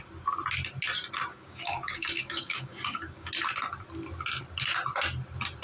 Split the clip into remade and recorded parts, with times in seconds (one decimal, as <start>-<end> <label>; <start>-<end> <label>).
0.0-1.3 recorded; 1.3-3.3 remade; 3.3-5.6 recorded